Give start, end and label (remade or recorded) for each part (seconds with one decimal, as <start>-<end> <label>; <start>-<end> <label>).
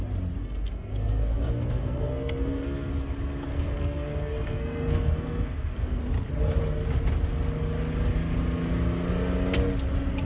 0.0-0.4 recorded; 0.4-2.9 remade; 2.9-3.5 recorded; 3.5-6.0 remade; 6.0-10.3 recorded